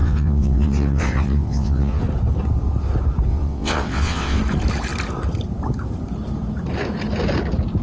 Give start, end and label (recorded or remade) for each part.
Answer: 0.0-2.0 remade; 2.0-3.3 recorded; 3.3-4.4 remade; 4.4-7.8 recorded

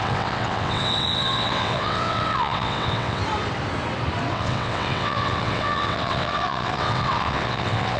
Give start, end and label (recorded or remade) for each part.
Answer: 0.0-3.2 remade; 3.2-4.3 recorded; 4.3-8.0 remade